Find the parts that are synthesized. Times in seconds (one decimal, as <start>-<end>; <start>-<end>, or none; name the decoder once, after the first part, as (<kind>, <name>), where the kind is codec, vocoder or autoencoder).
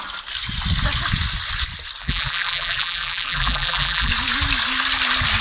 2.0-4.1 (vocoder, BigVGAN v2)